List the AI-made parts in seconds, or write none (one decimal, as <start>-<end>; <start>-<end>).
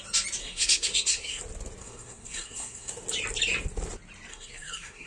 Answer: 0.4-1.4; 1.8-2.9; 4.3-5.1